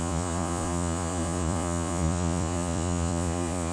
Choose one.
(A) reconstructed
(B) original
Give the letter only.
A